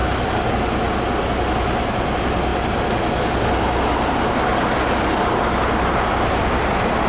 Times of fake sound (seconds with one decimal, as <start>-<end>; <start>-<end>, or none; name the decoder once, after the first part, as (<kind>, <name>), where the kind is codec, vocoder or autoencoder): 0.0-0.5 (vocoder, BigVGAN v2)